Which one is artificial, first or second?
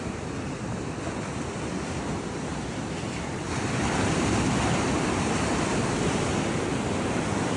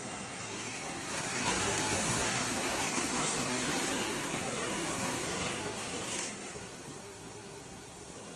second